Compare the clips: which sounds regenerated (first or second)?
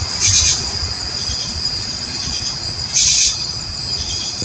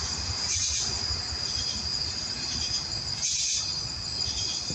first